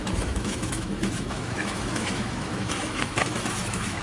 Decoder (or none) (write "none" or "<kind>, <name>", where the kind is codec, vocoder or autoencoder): autoencoder, DAC-VAE